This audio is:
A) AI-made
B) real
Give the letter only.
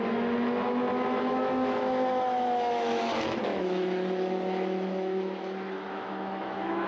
A